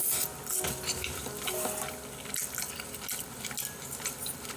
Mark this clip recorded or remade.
recorded